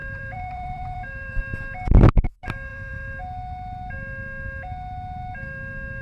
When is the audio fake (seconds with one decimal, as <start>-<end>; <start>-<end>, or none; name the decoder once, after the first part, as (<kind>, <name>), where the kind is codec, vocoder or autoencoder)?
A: 0.0-1.4 (vocoder, BigVGAN v2); 2.7-3.2